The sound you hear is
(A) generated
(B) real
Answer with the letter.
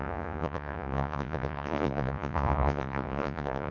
A